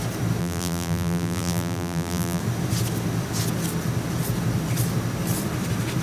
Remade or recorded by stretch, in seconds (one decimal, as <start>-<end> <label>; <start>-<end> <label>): 0.0-0.4 recorded; 0.4-2.4 remade; 2.4-6.0 recorded

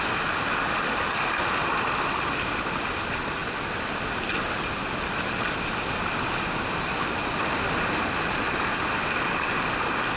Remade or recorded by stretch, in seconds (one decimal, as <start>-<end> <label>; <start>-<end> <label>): 0.0-10.2 recorded

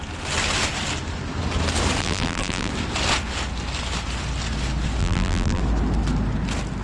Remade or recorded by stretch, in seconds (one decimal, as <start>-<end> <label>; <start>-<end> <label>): 0.0-2.0 recorded; 2.0-2.7 remade; 2.7-5.0 recorded; 5.0-5.6 remade; 5.6-6.8 recorded

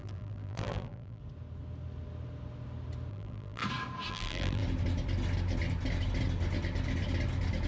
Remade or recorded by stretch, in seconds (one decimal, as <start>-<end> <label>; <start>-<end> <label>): 0.0-1.2 remade; 1.2-3.1 recorded; 3.1-3.6 remade; 3.6-4.1 recorded; 4.1-4.6 remade; 4.6-7.7 recorded

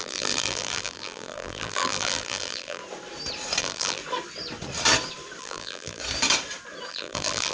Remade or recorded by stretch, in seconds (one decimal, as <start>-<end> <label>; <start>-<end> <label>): 0.0-2.8 remade; 2.8-3.6 recorded; 3.6-4.0 remade; 4.0-5.4 recorded; 5.4-6.0 remade; 6.0-6.9 recorded; 6.9-7.5 remade

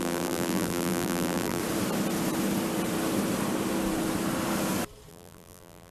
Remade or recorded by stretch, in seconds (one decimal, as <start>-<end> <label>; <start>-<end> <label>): 0.0-1.6 remade; 1.6-5.1 recorded; 5.1-5.9 remade